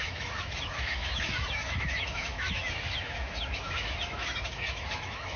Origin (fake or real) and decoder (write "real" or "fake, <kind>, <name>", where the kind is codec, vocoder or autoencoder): fake, autoencoder, DAC-VAE